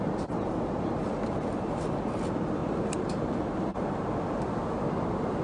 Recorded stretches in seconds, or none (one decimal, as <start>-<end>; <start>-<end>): 0.0-2.6; 4.1-5.4